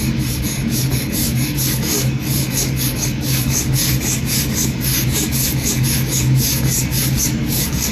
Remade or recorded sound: remade